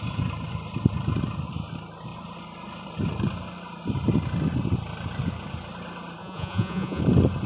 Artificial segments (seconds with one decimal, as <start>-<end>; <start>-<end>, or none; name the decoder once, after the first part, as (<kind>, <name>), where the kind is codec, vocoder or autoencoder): 6.2-7.0 (vocoder, Vocos)